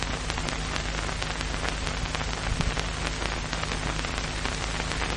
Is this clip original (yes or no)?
yes